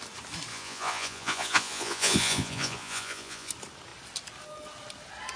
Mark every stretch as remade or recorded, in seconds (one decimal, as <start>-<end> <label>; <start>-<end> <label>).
0.0-0.5 recorded; 0.5-3.5 remade; 3.5-5.4 recorded